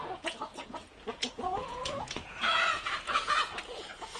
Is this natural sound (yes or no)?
no